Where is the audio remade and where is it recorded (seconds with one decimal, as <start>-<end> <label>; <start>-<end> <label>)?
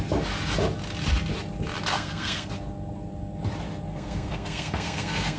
0.0-1.9 recorded; 1.9-2.5 remade; 2.5-3.9 recorded; 3.9-5.4 remade